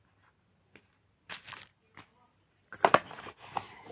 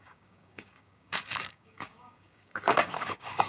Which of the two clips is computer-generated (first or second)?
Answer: second